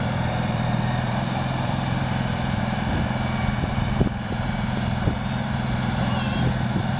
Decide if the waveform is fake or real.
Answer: fake